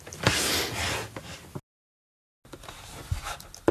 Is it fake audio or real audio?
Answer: real